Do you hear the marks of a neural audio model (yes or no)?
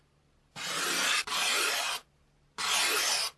no